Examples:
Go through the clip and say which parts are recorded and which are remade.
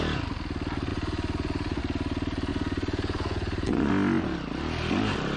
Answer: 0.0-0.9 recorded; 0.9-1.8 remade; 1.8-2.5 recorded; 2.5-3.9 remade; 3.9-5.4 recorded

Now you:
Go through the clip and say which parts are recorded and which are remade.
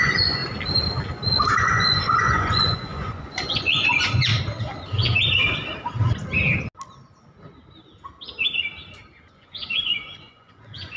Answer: 0.0-0.4 remade; 0.4-1.6 recorded; 1.6-4.3 remade; 4.3-9.3 recorded; 9.3-11.0 remade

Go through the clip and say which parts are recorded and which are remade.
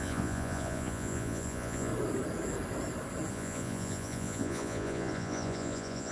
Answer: 0.0-1.9 remade; 1.9-3.3 recorded; 3.3-6.1 remade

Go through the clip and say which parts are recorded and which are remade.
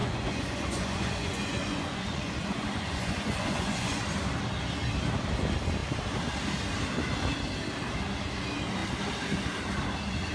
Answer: 0.0-4.0 remade; 4.0-10.3 recorded